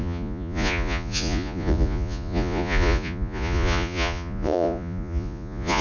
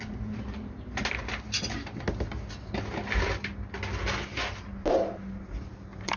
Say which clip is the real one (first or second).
second